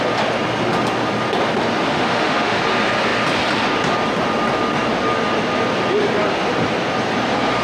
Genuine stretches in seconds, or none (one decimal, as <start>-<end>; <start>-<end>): 0.0-1.9; 2.6-7.6